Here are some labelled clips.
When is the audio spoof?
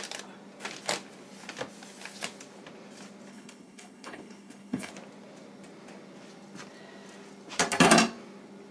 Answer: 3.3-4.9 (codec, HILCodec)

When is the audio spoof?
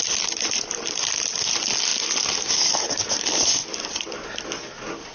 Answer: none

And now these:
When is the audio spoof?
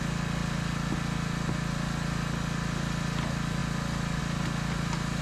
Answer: none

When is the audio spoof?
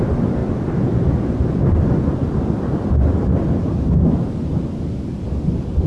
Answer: 0.4-3.9 (vocoder, BigVGAN v2)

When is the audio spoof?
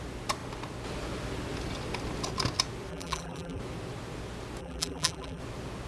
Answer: 2.9-3.6 (vocoder, BigVGAN v2); 4.6-5.4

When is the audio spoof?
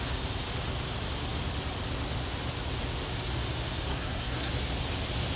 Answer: 3.9-4.5 (codec, SNAC)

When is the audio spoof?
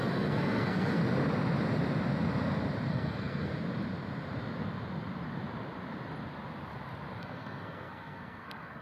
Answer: 0.0-1.0 (codec, SNAC); 2.9-3.5; 7.2-8.8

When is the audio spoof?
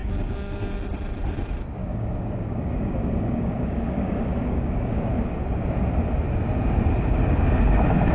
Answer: 0.0-0.6 (codec, DAC); 1.8-5.0